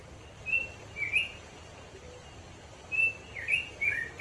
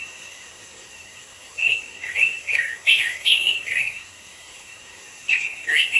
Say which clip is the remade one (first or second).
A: second